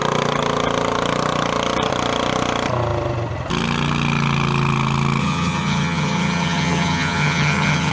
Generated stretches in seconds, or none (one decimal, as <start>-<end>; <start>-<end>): 5.2-7.9